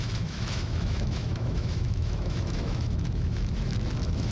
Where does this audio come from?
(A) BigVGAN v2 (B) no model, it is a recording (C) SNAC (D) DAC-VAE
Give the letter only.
D